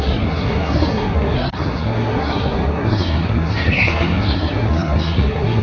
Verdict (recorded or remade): remade